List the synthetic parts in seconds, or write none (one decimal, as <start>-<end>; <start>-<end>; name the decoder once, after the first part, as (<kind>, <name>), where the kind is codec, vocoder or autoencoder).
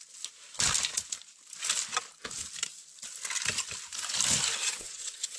4.6-5.4 (vocoder, WaveNeXt)